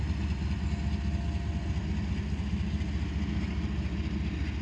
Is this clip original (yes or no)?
yes